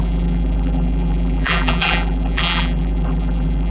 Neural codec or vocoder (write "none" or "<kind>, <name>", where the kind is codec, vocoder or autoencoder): vocoder, BigVGAN v2